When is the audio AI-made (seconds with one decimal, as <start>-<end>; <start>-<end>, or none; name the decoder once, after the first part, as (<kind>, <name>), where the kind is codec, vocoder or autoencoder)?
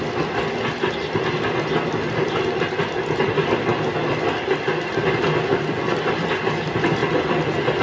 none